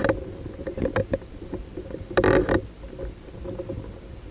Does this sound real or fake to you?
real